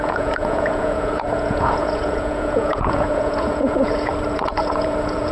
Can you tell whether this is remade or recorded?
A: remade